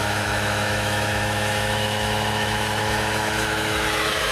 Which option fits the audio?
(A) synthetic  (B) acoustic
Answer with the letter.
A